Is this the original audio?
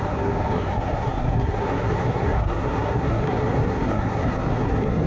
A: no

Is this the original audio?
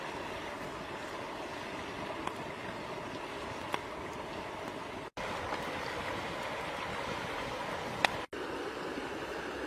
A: yes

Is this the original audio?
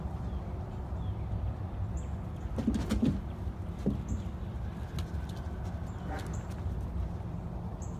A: yes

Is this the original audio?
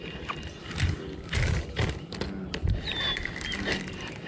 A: yes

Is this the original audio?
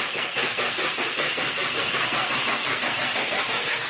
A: no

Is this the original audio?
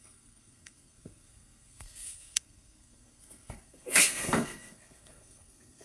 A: no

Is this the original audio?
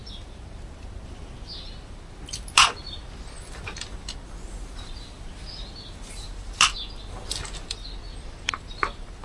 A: yes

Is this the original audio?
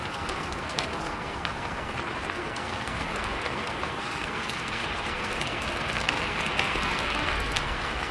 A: no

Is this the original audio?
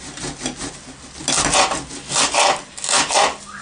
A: yes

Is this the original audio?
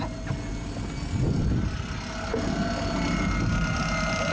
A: yes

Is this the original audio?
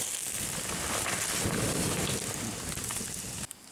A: yes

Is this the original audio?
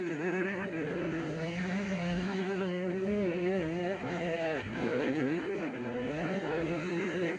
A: no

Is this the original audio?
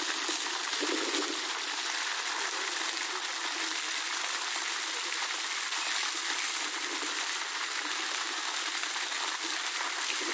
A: yes